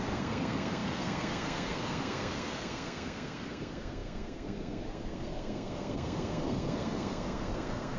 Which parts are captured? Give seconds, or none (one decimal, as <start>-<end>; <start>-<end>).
none